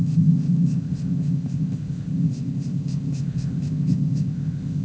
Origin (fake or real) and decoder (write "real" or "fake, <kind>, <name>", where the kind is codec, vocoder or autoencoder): fake, codec, ZipCodec